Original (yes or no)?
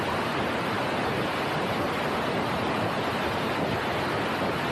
yes